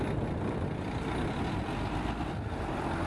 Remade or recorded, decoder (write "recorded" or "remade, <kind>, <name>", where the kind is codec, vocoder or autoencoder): recorded